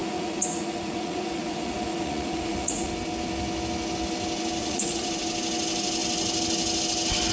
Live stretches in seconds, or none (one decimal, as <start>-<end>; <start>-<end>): 2.9-4.6; 5.1-7.3